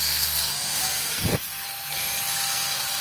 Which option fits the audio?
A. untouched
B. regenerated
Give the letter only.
B